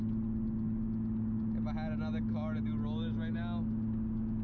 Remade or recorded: recorded